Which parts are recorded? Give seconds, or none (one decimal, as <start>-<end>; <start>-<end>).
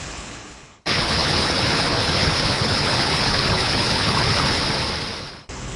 4.6-5.2